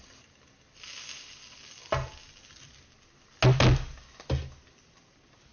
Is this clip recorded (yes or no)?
yes